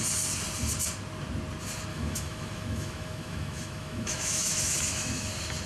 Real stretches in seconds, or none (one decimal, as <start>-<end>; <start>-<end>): 0.0-1.9; 5.3-5.7